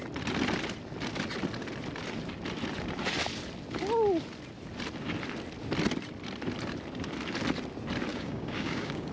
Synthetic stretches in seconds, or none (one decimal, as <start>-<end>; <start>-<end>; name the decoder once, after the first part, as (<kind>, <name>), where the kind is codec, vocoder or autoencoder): 8.1-9.1 (codec, DAC)

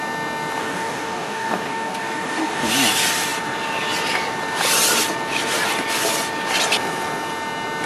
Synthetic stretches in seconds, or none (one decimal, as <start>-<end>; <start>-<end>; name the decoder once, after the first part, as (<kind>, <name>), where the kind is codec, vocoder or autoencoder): 0.6-2.7 (codec, DAC)

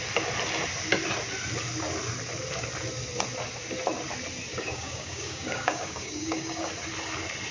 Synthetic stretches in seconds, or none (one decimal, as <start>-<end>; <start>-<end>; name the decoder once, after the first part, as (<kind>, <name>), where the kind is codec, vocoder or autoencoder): 4.5-6.7 (codec, DAC)

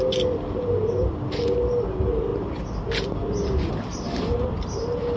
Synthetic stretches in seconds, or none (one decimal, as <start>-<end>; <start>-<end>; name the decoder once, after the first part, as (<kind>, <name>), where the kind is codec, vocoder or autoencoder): none

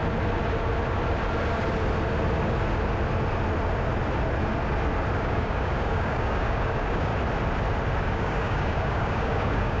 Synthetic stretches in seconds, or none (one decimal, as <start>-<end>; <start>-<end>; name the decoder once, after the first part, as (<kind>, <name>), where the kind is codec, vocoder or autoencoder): 5.2-7.1 (codec, DAC); 8.0-9.8